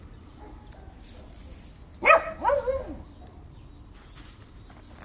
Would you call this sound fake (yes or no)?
no